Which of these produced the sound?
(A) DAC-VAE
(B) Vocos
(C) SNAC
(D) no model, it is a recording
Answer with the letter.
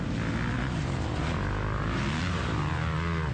D